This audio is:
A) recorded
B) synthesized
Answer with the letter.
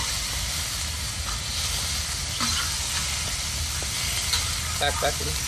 A